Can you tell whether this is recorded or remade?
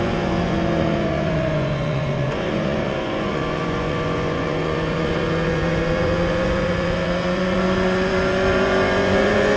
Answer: remade